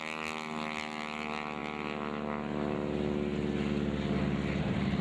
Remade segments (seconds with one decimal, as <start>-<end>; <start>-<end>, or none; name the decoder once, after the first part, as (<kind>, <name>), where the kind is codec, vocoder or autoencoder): none

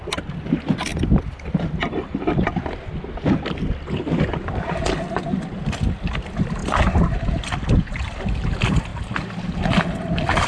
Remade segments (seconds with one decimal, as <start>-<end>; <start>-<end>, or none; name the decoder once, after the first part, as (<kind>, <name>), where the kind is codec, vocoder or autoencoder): none

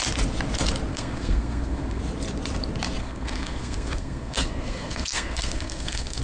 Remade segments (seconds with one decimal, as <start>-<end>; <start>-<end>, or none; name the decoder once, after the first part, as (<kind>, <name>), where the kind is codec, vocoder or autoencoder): 0.9-2.0 (codec, SNAC); 3.0-6.2

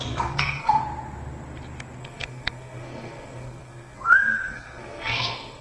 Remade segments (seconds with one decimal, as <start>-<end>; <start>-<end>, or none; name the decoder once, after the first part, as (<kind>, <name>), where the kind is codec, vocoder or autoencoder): 0.0-0.8 (codec, SNAC); 2.0-5.6

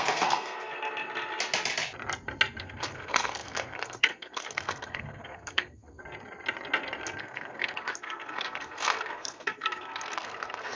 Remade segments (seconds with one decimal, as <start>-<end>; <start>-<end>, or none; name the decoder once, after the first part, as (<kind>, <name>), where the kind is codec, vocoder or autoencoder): 0.0-0.7 (codec, SNAC); 2.6-6.0; 7.2-10.8

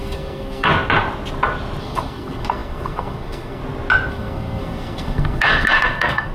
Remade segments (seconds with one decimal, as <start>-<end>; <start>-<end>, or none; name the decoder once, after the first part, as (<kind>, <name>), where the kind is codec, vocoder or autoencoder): 0.0-0.7 (codec, SNAC); 1.8-3.6; 4.1-6.3